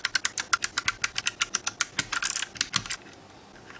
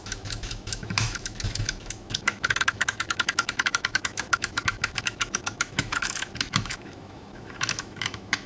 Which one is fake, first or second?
second